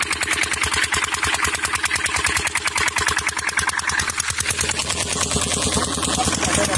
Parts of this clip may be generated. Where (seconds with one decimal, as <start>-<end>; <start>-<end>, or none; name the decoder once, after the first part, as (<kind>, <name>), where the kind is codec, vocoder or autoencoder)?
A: 4.8-6.3 (vocoder, BigVGAN v2)